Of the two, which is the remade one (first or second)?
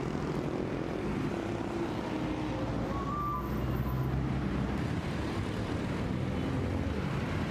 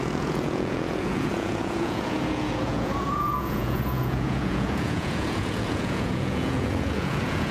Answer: second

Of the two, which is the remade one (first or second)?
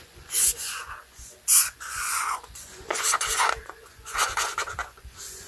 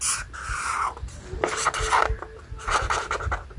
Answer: first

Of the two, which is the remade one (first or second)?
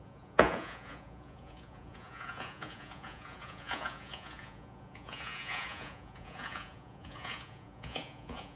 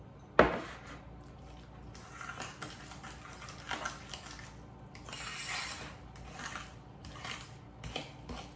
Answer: first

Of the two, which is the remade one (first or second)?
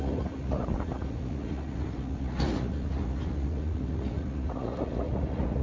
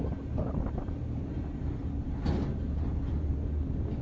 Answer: first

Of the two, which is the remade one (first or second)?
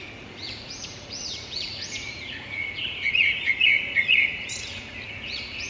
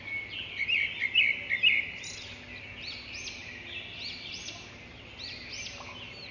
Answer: first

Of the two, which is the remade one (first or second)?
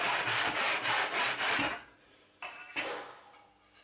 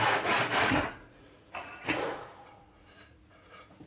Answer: second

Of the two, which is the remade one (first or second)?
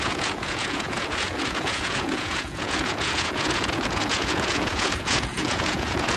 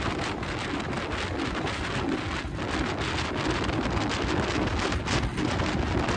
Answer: first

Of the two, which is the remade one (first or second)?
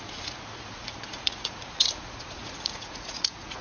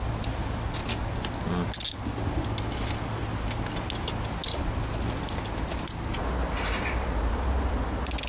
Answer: first